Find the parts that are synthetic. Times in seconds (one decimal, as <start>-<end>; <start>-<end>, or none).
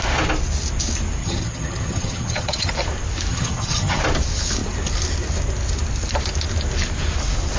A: 1.2-2.7; 3.3-4.0